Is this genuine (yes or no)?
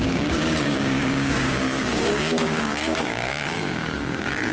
no